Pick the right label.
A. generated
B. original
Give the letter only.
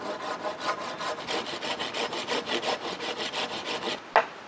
B